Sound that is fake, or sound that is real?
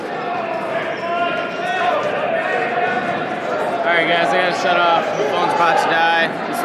real